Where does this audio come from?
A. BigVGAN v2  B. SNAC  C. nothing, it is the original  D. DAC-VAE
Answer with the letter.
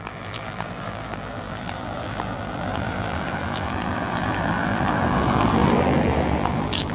A